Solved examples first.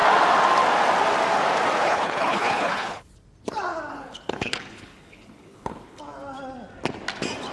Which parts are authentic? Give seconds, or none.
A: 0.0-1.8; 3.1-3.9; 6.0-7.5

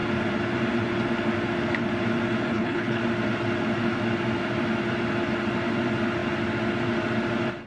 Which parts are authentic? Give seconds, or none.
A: 0.0-2.5; 3.0-7.7